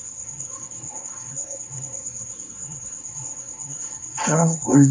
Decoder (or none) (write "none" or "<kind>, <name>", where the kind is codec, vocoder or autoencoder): codec, SNAC